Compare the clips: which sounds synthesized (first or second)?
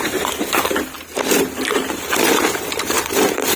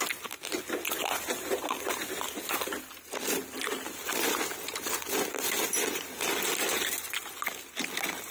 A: first